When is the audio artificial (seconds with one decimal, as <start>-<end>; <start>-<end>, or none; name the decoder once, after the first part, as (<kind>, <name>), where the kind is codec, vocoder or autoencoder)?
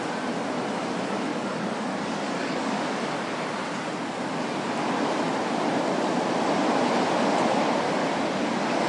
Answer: 1.3-2.8 (codec, DAC)